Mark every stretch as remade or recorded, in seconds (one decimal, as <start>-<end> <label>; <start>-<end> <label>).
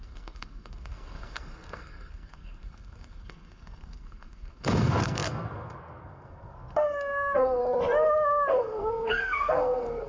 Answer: 0.0-7.6 remade; 7.6-8.5 recorded; 8.5-10.1 remade